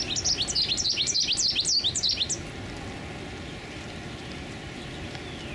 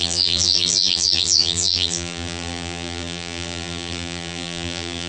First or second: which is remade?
second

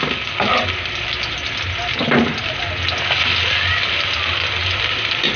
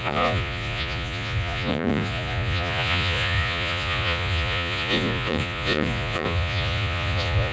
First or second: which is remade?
second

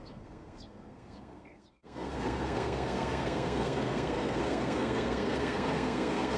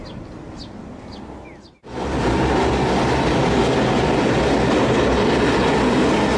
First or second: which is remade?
first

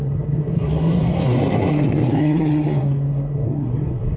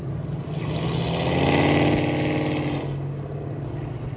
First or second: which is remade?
first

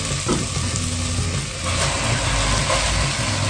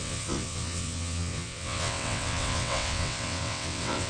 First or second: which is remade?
second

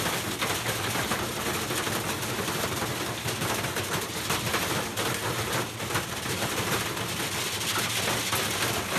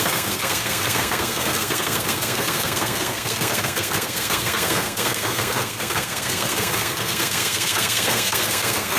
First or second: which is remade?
second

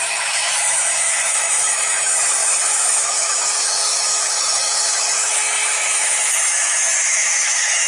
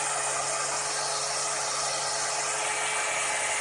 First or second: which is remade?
first